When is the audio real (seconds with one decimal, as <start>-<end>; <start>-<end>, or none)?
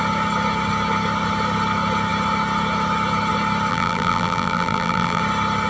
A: 0.0-3.7; 5.2-5.7